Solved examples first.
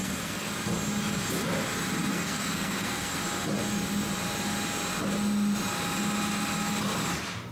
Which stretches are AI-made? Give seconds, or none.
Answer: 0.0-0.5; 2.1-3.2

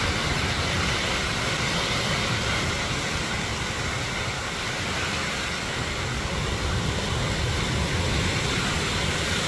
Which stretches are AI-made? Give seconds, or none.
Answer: none

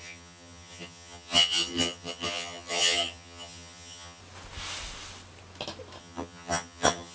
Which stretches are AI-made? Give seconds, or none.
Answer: 0.0-4.2; 6.0-7.1

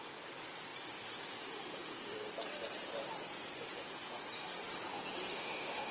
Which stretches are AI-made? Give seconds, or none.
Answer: 5.3-5.9

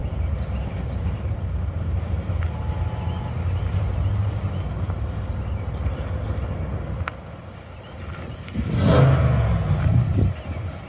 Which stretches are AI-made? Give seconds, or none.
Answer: 0.0-2.6

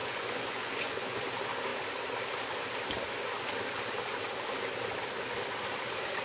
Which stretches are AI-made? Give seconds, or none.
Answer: 0.0-1.2

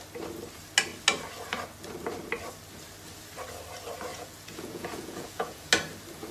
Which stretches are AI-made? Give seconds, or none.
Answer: 4.1-5.7

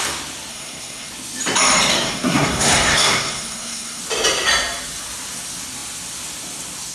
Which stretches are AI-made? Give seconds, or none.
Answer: 0.5-1.1; 1.9-4.0